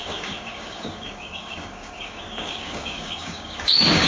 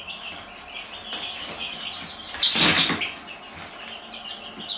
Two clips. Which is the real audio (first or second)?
second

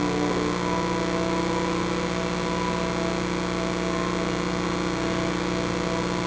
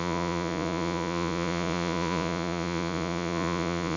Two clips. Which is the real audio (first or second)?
first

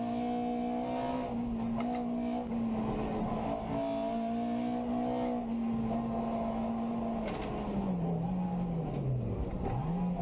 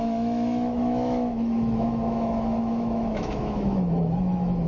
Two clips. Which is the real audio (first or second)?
first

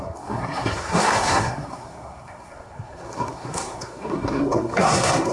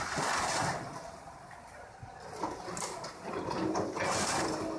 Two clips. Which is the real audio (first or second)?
second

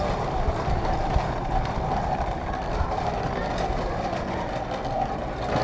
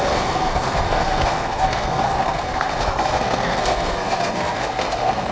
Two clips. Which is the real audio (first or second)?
first